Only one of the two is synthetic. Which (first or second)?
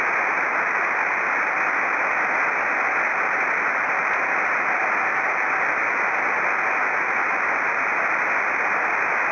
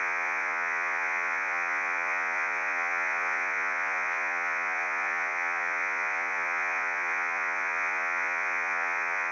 second